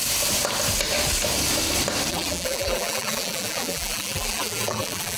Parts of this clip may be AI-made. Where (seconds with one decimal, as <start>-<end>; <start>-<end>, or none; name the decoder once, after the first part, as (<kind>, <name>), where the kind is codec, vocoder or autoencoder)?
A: 2.1-5.2 (vocoder, BigVGAN v2)